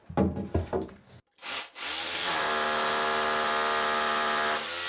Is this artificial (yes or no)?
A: no